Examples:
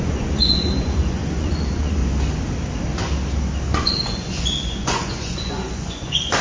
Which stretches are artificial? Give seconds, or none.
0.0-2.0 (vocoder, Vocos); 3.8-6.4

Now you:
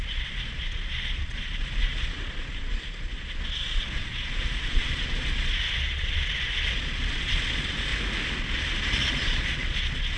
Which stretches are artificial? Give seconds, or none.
0.0-7.9 (vocoder, Vocos); 8.4-10.2

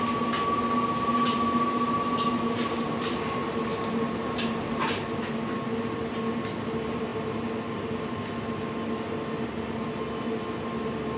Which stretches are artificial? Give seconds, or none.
none

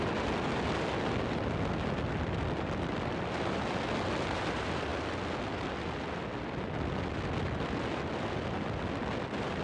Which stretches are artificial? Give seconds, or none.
none

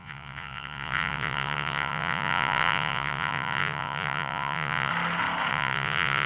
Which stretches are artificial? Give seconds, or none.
0.0-4.9 (vocoder, Vocos); 5.5-6.3

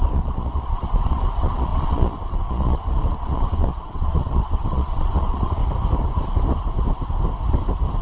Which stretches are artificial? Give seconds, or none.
0.0-5.6 (vocoder, Vocos)